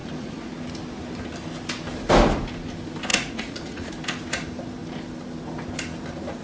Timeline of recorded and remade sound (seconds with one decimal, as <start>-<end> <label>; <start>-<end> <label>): 0.0-0.5 remade; 0.5-3.1 recorded; 3.1-3.9 remade; 3.9-6.4 recorded